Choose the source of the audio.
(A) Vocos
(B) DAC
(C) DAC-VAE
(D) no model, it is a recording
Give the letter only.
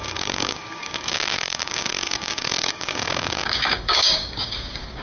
B